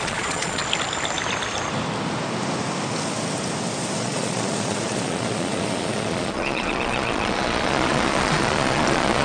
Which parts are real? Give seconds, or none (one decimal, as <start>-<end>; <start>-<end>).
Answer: 0.6-4.0